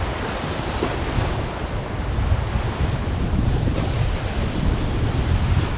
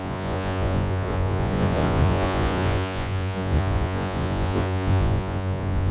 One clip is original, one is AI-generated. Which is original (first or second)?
first